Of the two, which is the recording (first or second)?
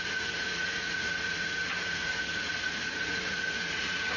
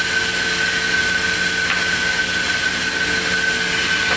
second